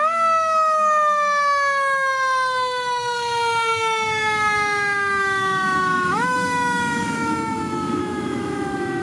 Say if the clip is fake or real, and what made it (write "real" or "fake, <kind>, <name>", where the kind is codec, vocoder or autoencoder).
fake, autoencoder, DAC-VAE